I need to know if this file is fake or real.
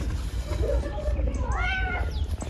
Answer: real